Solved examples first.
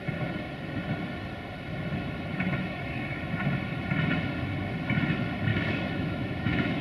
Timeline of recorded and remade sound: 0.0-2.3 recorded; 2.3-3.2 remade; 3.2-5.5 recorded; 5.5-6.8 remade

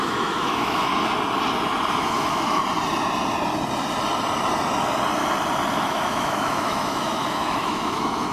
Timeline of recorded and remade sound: 0.0-0.9 remade; 0.9-1.9 recorded; 1.9-2.6 remade; 2.6-5.8 recorded; 5.8-8.3 remade

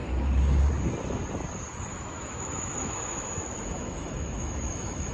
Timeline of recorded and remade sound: 0.0-1.9 recorded; 1.9-5.1 remade

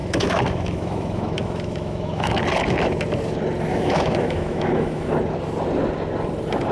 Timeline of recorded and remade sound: 0.0-2.4 remade; 2.4-3.7 recorded; 3.7-5.1 remade; 5.1-6.7 recorded

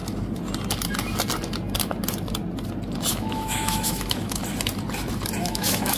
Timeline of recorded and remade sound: 0.0-3.1 recorded; 3.1-4.4 remade; 4.4-5.4 recorded; 5.4-6.0 remade

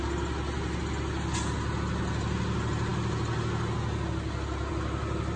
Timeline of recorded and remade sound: 0.0-5.4 recorded

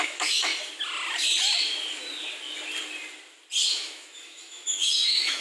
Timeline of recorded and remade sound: 0.0-0.5 remade; 0.5-3.7 recorded; 3.7-5.4 remade

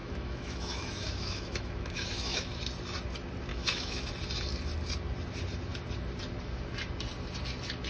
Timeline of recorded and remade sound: 0.0-2.6 remade; 2.6-3.5 recorded; 3.5-4.1 remade; 4.1-7.9 recorded